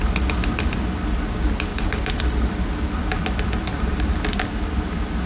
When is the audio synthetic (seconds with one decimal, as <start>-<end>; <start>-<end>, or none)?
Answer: 1.7-4.1